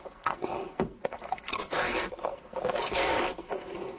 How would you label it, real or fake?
fake